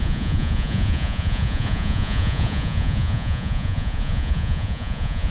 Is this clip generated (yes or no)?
yes